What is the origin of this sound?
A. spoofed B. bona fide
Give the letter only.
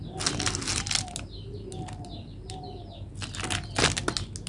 B